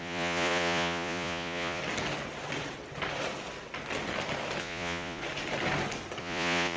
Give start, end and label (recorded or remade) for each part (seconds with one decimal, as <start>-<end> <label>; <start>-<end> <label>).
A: 0.0-1.8 remade; 1.8-4.6 recorded; 4.6-5.2 remade; 5.2-6.2 recorded; 6.2-6.8 remade